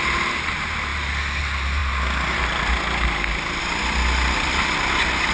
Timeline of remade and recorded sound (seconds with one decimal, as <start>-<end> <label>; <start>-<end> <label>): 0.0-5.3 recorded

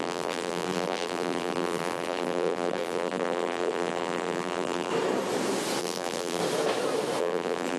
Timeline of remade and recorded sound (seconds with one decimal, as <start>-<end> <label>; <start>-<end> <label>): 0.0-4.9 remade; 4.9-5.8 recorded; 5.8-6.4 remade; 6.4-7.2 recorded; 7.2-7.8 remade

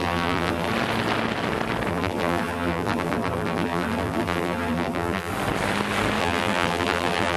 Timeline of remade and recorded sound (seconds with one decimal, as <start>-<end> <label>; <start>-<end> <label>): 0.0-0.7 remade; 0.7-1.9 recorded; 1.9-5.3 remade; 5.3-6.2 recorded; 6.2-7.4 remade

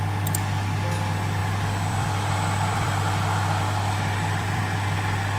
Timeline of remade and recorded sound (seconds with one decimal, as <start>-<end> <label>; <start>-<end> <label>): 0.0-1.4 recorded; 1.4-4.6 remade; 4.6-5.4 recorded